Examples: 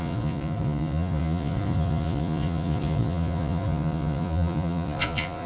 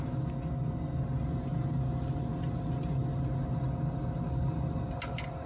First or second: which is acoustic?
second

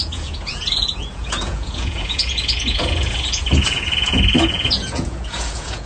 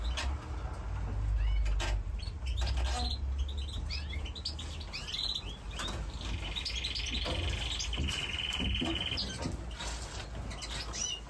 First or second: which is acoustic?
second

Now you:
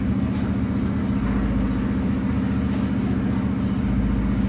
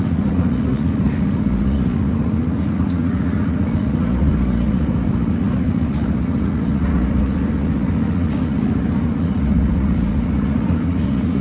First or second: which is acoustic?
first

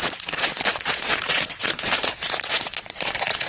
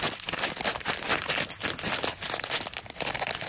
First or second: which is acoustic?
second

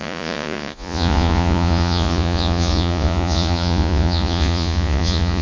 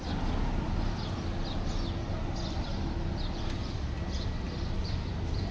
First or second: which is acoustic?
second